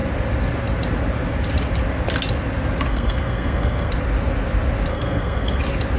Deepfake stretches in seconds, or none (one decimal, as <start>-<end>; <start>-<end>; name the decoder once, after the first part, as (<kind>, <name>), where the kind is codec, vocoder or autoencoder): 2.9-3.9 (codec, SNAC); 4.9-5.6